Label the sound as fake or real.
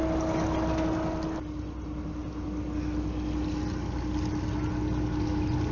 real